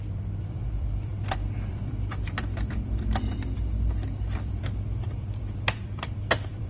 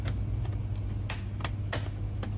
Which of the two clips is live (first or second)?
second